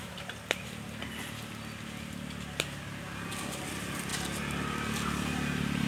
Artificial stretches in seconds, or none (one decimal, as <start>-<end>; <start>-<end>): none